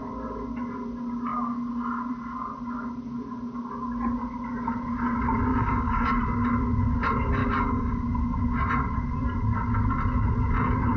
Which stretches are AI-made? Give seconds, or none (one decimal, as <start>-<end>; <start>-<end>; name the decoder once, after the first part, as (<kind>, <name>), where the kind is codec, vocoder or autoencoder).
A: 5.5-6.1 (codec, DAC); 7.4-8.0

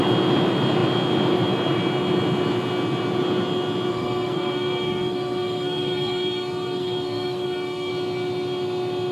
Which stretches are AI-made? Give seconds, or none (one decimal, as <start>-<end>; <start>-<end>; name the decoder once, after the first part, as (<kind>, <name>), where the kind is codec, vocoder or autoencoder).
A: 3.9-7.9 (codec, SNAC)

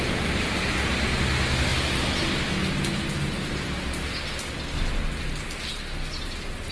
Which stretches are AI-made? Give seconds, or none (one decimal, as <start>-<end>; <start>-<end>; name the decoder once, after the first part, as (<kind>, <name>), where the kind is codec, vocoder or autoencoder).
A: none